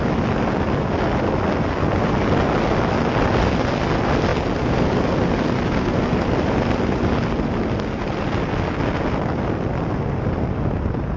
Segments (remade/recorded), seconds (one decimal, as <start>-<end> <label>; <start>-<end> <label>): 0.0-11.2 recorded